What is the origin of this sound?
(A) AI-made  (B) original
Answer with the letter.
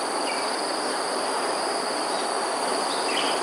A